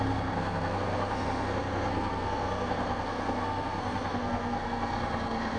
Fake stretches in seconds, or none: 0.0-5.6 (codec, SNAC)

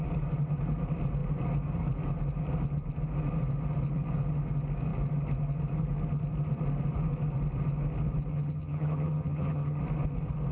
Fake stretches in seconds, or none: 8.3-9.8 (vocoder, HiFi-GAN)

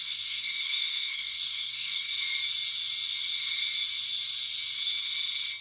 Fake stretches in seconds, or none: 0.0-2.1 (codec, SNAC)